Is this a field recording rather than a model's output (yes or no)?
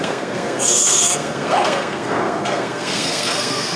no